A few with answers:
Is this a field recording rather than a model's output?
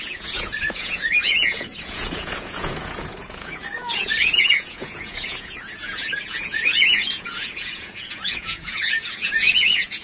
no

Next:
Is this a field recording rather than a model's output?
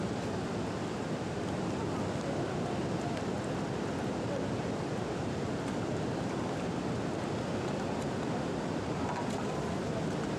yes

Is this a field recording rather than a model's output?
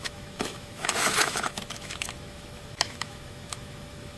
no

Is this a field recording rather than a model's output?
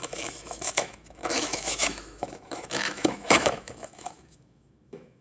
no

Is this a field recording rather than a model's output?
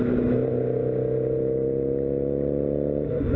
yes